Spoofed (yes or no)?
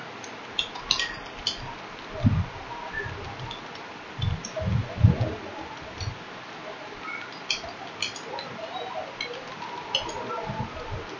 no